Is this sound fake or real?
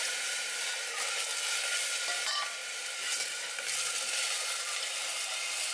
real